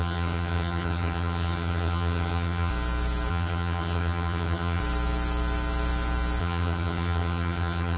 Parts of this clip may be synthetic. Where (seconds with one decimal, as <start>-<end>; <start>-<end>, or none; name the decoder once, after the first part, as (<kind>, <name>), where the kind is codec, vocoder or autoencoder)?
0.0-2.7 (vocoder, HiFi-GAN); 3.3-4.8; 6.4-8.0